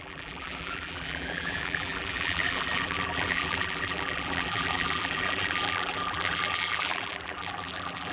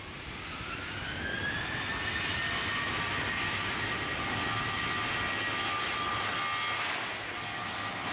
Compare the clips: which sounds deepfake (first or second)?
first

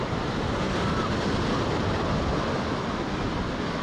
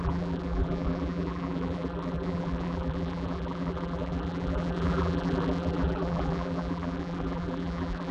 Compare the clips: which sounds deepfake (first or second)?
second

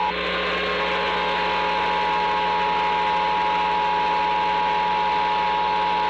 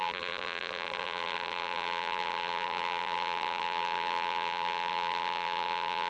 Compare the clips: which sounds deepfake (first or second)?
second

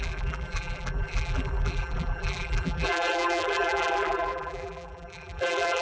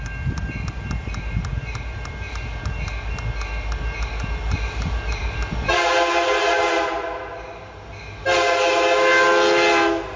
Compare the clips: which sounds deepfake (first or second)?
first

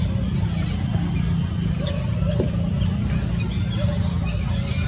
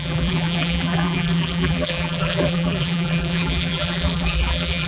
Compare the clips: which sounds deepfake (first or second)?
second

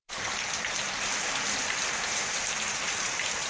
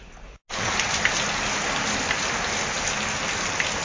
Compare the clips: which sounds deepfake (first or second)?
first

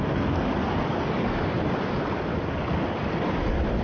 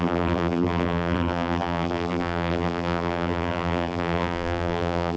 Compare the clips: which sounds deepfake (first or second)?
second